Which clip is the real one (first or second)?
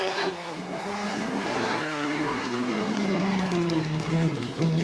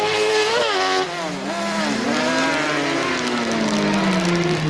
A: second